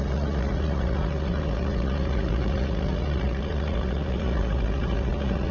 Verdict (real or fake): fake